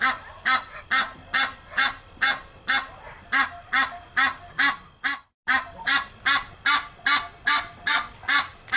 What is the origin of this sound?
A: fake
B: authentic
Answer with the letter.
B